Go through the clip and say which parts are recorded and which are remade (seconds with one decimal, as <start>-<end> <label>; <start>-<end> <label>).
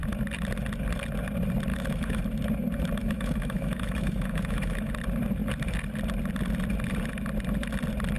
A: 0.0-1.7 recorded; 1.7-2.2 remade; 2.2-3.0 recorded; 3.0-4.9 remade; 4.9-8.2 recorded